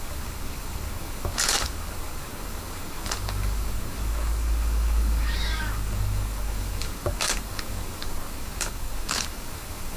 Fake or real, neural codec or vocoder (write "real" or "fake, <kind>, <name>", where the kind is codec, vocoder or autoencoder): fake, codec, DAC